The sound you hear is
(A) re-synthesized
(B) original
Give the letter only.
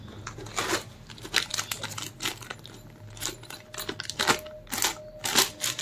B